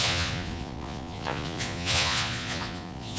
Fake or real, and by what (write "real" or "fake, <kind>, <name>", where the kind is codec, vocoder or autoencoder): fake, vocoder, Vocos